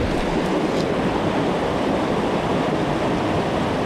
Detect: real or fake real